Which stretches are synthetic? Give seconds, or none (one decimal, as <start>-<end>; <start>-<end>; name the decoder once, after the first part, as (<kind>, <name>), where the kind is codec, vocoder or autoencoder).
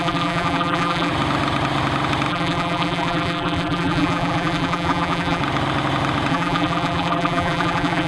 0.0-1.1 (vocoder, BigVGAN v2); 2.3-5.4; 6.3-8.1